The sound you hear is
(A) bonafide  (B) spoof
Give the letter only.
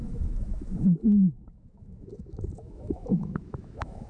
B